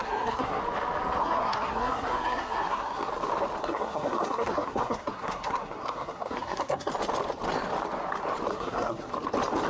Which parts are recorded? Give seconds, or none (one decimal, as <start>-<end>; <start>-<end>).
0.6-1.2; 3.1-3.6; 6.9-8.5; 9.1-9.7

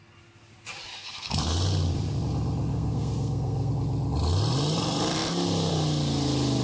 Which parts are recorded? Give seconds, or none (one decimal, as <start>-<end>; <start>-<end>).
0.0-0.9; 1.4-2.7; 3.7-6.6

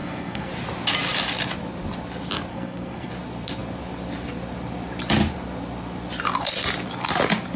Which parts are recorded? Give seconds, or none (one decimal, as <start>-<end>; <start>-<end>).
0.5-2.5; 3.1-7.6

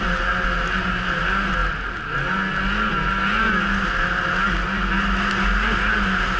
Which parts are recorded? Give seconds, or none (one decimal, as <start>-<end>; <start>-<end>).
0.0-6.4

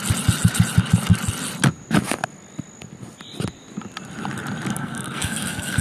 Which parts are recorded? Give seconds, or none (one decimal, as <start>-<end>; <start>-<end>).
0.0-4.7

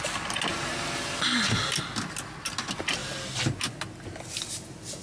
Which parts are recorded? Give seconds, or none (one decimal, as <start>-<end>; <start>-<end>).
0.0-5.0

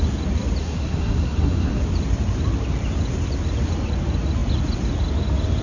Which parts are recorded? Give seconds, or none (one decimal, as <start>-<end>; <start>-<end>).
0.0-0.6; 1.8-5.6

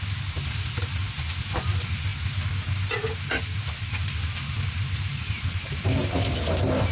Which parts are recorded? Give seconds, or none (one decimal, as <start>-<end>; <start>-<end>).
0.0-6.9